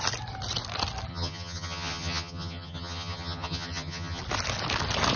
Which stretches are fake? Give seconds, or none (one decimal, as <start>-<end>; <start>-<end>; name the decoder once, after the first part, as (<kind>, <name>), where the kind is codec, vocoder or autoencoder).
1.1-4.2 (vocoder, HiFi-GAN)